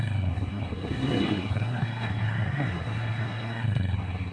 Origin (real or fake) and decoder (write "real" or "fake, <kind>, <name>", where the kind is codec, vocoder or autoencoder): fake, codec, SNAC